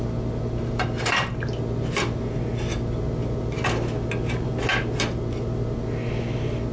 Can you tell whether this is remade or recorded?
recorded